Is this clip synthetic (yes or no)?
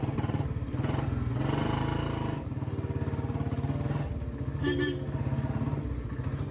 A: no